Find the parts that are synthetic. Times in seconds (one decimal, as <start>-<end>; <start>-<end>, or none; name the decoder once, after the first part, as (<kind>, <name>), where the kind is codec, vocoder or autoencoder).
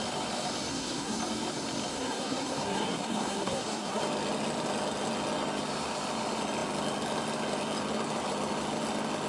0.7-1.2 (codec, SNAC); 1.9-4.0